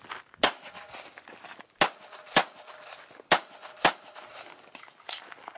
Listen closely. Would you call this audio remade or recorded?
recorded